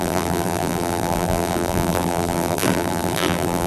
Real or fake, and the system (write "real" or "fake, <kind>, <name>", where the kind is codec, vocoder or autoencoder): fake, vocoder, BigVGAN v2